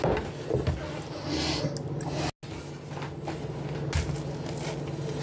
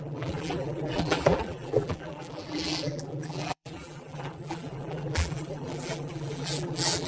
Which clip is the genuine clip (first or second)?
first